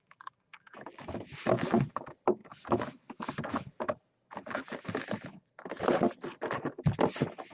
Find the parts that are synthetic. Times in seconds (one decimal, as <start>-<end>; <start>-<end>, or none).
none